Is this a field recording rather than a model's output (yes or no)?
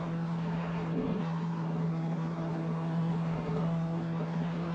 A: no